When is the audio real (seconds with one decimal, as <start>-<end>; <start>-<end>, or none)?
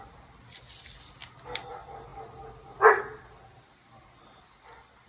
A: 0.0-5.1